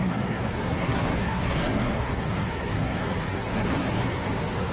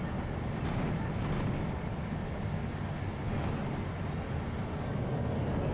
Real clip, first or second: second